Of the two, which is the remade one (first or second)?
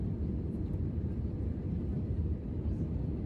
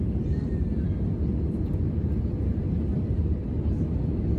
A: first